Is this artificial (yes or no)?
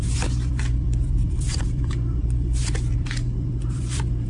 yes